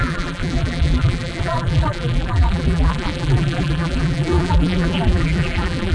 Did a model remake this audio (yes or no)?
yes